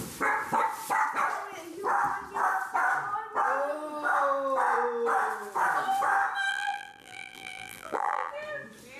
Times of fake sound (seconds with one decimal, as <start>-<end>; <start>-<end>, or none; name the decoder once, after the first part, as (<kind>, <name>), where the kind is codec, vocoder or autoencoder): 6.5-8.3 (vocoder, BigVGAN v2)